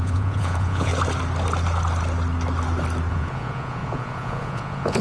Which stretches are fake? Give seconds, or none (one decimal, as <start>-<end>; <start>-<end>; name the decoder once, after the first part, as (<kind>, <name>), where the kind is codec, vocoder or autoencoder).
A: 0.0-0.9 (vocoder, Vocos); 3.1-5.0